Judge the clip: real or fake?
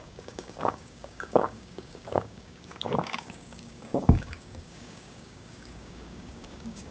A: fake